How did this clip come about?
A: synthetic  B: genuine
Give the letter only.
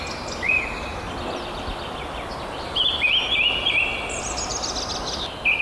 B